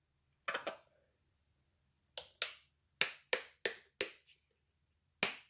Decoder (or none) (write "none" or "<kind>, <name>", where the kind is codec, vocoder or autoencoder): none